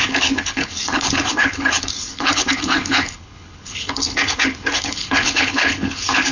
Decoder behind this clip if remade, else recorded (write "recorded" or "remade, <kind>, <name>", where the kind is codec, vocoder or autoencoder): remade, codec, HILCodec